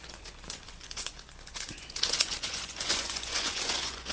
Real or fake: fake